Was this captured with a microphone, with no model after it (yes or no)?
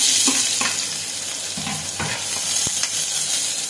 yes